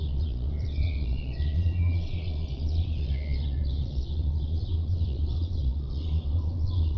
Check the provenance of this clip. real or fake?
fake